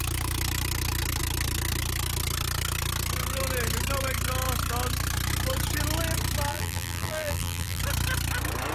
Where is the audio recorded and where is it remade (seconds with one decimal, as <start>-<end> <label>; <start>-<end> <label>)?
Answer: 0.0-6.5 recorded; 6.5-7.8 remade; 7.8-8.7 recorded